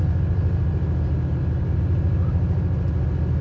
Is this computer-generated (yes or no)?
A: no